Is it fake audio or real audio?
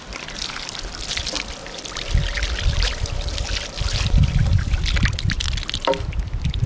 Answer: real